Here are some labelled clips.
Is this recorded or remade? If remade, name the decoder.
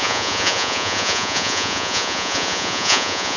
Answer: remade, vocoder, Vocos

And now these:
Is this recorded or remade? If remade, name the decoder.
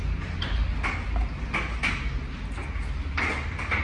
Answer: recorded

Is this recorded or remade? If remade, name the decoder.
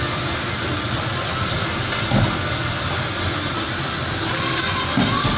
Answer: recorded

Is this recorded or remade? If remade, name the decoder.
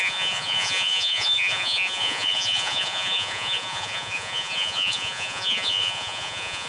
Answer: remade, vocoder, Vocos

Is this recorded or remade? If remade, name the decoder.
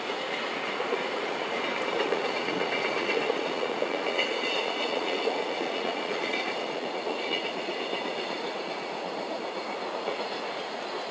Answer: remade, vocoder, Vocos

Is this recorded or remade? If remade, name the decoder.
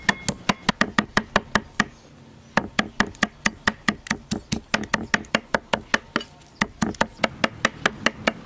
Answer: recorded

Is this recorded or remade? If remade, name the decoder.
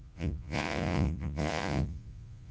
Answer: remade, vocoder, Vocos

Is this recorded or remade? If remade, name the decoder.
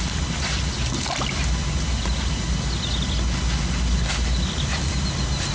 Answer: recorded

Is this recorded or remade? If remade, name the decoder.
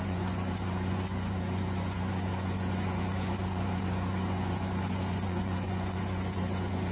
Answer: remade, vocoder, Vocos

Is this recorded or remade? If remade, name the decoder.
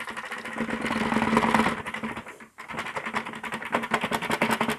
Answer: recorded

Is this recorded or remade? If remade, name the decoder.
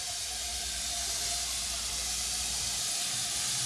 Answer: recorded